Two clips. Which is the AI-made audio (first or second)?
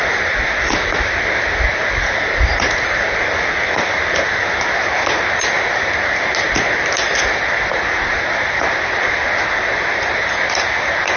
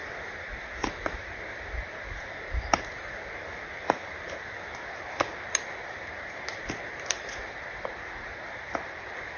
second